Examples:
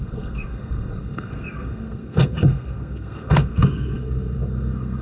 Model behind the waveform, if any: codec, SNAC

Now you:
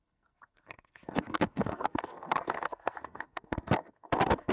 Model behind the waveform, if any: codec, SNAC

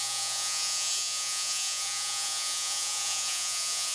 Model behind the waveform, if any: vocoder, Vocos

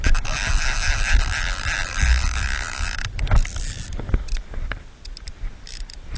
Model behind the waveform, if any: none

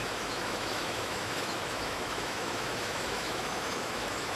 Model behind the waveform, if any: autoencoder, DAC-VAE